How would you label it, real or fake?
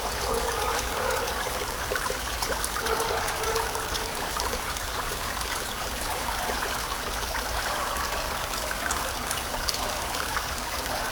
fake